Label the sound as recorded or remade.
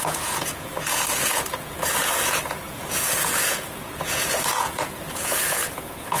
remade